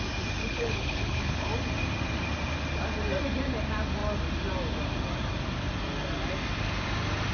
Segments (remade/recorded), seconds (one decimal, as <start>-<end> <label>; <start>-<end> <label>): 0.0-0.4 recorded; 0.4-1.5 remade; 1.5-7.3 recorded